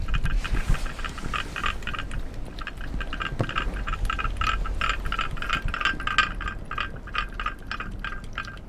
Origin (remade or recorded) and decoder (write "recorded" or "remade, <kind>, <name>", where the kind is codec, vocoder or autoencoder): recorded